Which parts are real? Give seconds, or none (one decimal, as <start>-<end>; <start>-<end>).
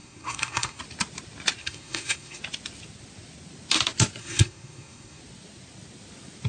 0.8-1.6; 2.4-4.2; 5.2-6.5